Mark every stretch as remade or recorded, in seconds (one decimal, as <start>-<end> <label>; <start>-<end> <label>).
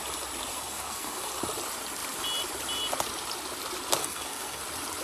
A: 0.0-0.5 recorded; 0.5-1.3 remade; 1.3-4.0 recorded; 4.0-4.6 remade; 4.6-5.0 recorded